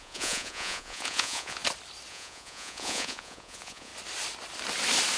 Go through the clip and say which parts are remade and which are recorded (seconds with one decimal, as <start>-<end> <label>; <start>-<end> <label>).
0.0-1.6 remade; 1.6-2.1 recorded; 2.1-3.9 remade; 3.9-5.2 recorded